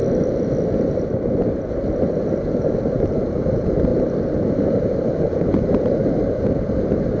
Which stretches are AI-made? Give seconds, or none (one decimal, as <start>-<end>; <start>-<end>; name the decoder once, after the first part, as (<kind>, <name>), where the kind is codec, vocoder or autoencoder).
2.6-3.9 (vocoder, BigVGAN v2); 4.5-7.2